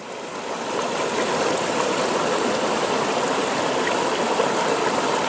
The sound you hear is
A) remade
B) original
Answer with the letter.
B